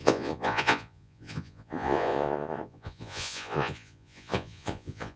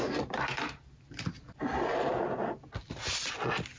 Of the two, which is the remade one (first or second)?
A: first